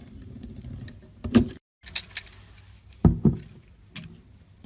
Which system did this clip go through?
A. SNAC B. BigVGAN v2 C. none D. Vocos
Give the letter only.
C